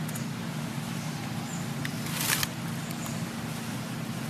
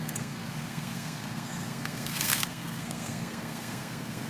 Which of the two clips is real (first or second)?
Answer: first